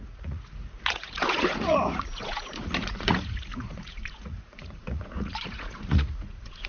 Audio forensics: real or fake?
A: fake